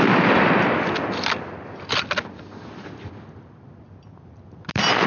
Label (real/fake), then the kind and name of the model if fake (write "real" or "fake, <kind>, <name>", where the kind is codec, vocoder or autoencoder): fake, vocoder, BigVGAN v2